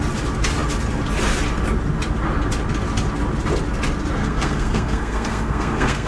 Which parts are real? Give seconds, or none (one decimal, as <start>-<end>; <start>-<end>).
0.0-4.2